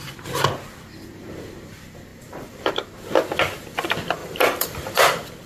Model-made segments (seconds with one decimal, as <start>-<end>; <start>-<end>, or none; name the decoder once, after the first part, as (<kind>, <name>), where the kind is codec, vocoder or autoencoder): 2.1-2.7 (vocoder, BigVGAN v2); 4.2-4.9